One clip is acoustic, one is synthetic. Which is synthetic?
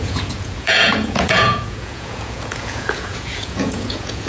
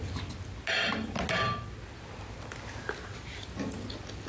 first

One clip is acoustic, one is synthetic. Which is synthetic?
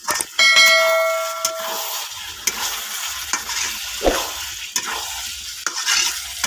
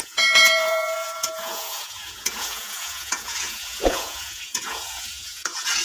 second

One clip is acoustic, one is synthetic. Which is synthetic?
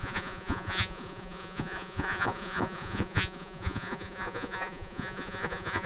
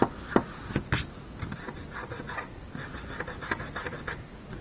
first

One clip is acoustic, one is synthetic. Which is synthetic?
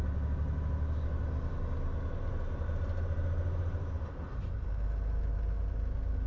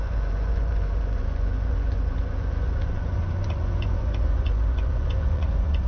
second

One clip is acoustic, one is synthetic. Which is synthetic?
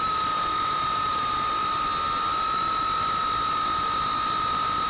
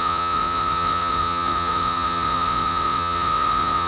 second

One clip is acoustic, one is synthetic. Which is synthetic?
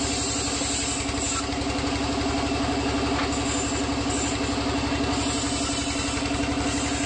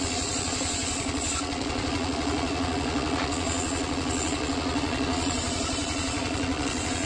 second